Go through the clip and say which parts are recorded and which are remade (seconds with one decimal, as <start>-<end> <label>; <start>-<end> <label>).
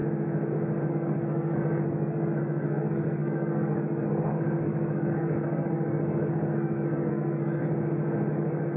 0.0-0.9 recorded; 0.9-7.6 remade; 7.6-8.3 recorded; 8.3-8.8 remade